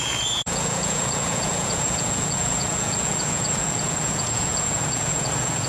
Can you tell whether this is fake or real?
fake